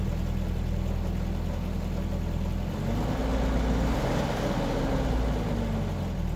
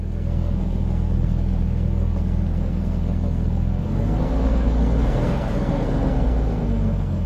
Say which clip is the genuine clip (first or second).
first